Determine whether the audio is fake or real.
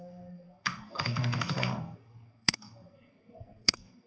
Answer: fake